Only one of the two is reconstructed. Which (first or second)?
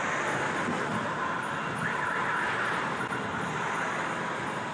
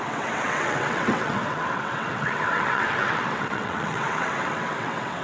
second